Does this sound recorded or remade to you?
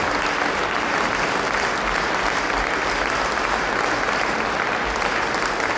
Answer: recorded